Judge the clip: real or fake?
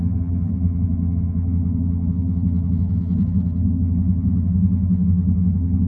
fake